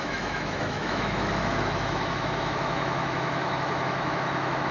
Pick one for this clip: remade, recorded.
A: remade